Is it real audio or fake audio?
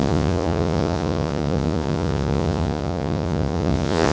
fake